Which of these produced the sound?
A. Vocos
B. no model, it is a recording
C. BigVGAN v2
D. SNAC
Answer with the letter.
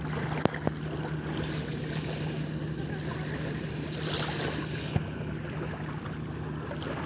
B